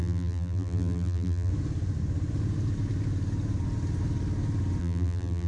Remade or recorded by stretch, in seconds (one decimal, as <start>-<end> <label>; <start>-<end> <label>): 0.0-1.5 remade; 1.5-4.8 recorded; 4.8-5.5 remade